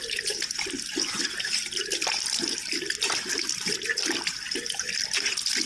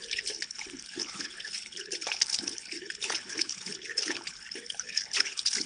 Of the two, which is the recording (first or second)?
first